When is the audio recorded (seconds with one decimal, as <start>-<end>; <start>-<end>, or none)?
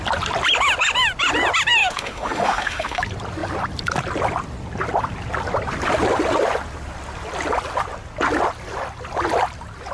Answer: 0.0-1.8; 3.0-9.9